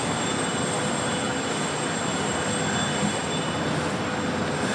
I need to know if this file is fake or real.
real